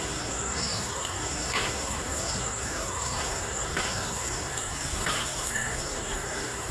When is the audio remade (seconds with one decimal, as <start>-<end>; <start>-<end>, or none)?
0.0-6.7